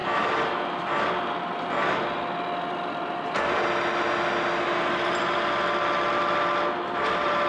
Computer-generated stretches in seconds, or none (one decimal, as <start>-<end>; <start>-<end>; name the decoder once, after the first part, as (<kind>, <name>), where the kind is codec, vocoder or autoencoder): none